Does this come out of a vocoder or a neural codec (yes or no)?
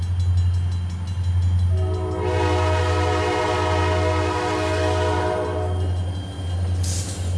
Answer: no